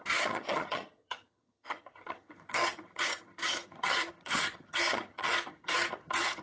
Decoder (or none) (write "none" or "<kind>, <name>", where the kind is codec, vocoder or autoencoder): vocoder, HiFi-GAN